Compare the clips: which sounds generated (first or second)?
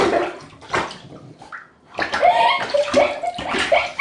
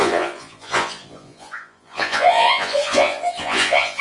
second